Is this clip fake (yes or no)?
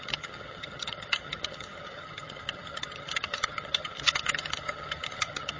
yes